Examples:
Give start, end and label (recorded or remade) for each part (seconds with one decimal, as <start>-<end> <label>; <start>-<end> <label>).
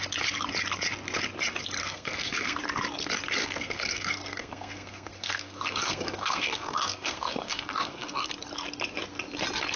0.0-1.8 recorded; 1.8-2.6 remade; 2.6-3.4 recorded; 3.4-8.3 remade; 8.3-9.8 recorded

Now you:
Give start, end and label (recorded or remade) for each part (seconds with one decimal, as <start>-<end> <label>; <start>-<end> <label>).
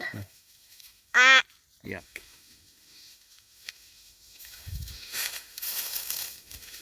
0.0-1.4 remade; 1.4-2.0 recorded; 2.0-6.8 remade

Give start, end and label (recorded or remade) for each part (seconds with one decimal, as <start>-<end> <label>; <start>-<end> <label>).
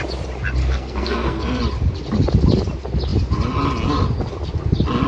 0.0-0.6 recorded; 0.6-1.6 remade; 1.6-5.1 recorded